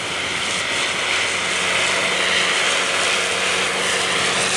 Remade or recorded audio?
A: recorded